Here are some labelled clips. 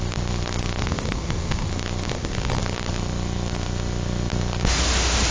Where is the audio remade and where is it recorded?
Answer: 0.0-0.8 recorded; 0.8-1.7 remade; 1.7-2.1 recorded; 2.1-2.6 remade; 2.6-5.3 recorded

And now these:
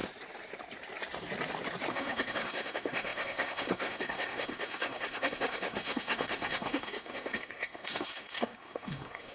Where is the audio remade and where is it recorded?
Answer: 0.0-1.9 recorded; 1.9-9.3 remade

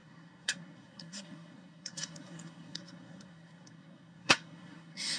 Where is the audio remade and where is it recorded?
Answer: 0.0-5.2 remade

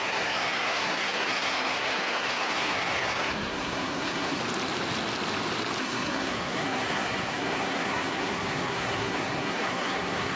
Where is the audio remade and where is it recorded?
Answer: 0.0-4.4 remade; 4.4-5.8 recorded; 5.8-10.4 remade

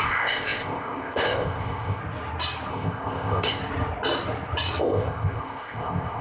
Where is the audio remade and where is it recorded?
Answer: 0.0-2.0 remade; 2.0-2.7 recorded; 2.7-3.6 remade; 3.6-4.8 recorded; 4.8-6.2 remade